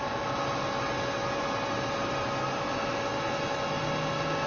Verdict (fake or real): real